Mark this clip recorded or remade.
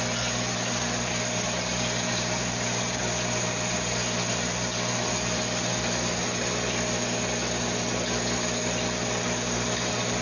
recorded